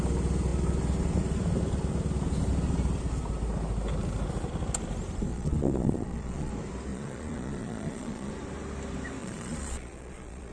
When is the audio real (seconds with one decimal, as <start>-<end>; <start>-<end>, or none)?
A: 0.0-5.3; 6.5-6.9; 8.3-9.2